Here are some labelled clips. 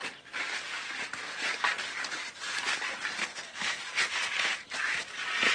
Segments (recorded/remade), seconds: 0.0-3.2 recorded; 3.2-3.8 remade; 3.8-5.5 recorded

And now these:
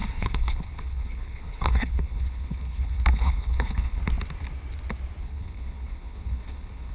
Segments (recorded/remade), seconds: 0.0-4.0 remade; 4.0-5.2 recorded; 5.2-6.9 remade